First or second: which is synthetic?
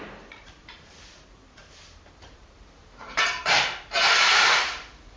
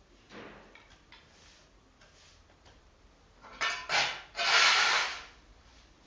first